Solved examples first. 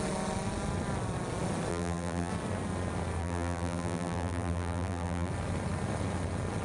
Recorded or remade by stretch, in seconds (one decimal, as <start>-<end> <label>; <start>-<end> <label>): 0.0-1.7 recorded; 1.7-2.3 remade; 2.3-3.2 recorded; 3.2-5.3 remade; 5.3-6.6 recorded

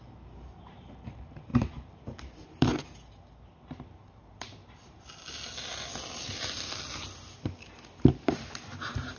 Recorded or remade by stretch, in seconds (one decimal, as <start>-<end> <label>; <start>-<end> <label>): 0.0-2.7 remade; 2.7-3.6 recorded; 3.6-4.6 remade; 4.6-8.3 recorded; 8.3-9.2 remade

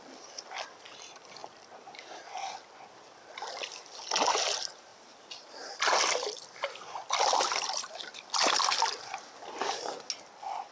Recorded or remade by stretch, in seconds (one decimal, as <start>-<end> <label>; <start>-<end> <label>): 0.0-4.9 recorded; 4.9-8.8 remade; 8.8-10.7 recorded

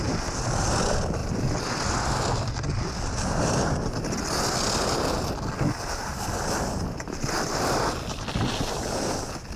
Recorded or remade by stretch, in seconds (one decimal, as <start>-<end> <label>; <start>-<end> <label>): 0.0-9.6 recorded